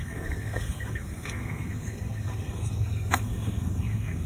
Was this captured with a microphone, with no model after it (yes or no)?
no